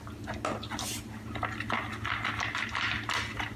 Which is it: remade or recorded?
recorded